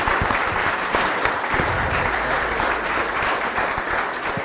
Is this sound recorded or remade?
remade